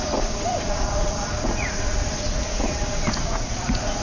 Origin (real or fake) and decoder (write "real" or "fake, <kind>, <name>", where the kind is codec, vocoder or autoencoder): fake, vocoder, Vocos